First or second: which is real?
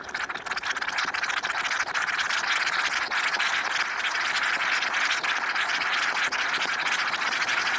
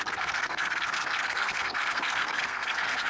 first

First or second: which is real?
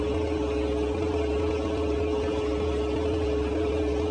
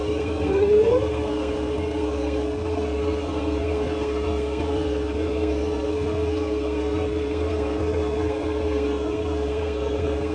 first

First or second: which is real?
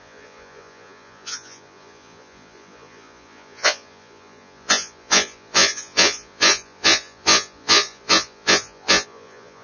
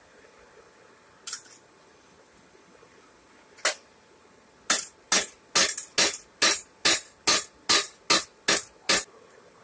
second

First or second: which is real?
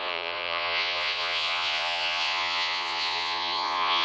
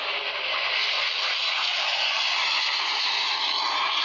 second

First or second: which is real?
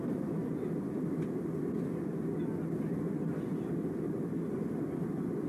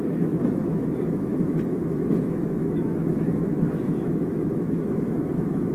first